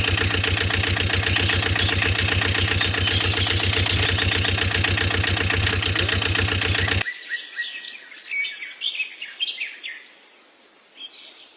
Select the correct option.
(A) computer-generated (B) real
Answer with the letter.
B